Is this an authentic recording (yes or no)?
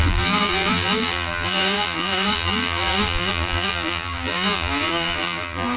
no